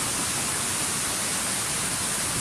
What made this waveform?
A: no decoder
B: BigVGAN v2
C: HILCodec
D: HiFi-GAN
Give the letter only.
A